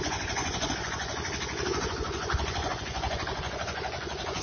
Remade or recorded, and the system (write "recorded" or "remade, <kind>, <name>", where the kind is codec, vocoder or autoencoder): remade, vocoder, Vocos